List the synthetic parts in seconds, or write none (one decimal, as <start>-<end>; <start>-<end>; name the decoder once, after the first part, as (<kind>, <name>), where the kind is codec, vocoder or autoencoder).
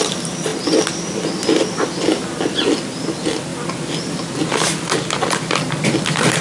none